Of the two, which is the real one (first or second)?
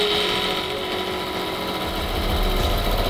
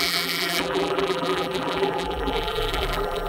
first